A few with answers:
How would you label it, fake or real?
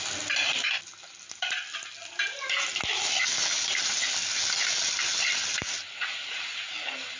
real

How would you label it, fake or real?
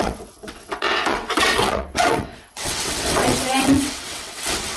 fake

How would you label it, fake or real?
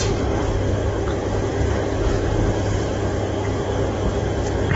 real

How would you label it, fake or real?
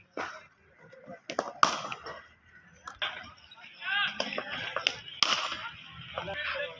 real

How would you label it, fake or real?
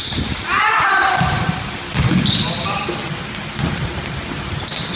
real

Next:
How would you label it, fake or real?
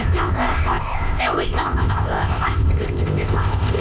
fake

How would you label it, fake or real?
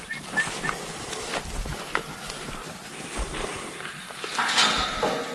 real